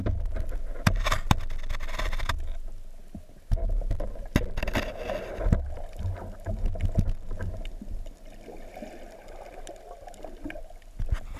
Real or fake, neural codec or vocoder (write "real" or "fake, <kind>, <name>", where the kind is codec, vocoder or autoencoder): real